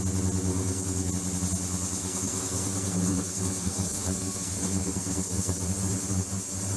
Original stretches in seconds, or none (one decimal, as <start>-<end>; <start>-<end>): 0.0-0.5; 1.1-2.0; 5.6-6.8